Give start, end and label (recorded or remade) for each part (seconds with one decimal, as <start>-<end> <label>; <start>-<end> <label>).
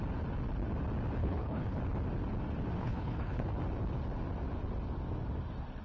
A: 0.0-1.2 recorded; 1.2-1.8 remade; 1.8-2.8 recorded; 2.8-3.4 remade; 3.4-5.8 recorded